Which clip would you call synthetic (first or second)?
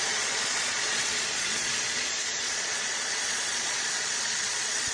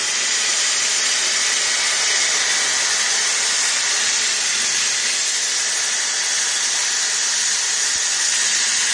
first